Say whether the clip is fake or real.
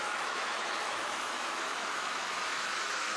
fake